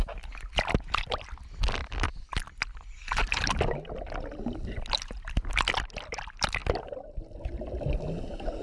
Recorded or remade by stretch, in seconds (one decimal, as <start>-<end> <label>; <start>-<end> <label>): 0.0-8.6 recorded